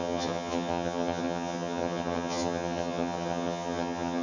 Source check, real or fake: fake